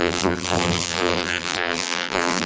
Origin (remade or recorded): remade